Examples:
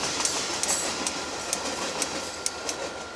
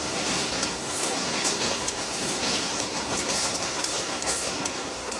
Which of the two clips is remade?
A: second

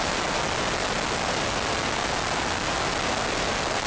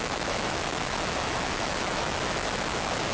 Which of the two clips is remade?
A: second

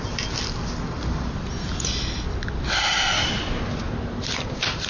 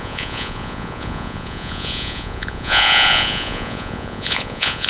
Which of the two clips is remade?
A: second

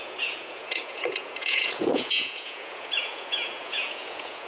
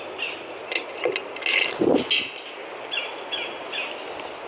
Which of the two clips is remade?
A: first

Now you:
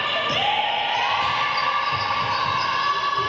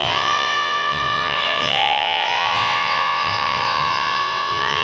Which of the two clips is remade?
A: second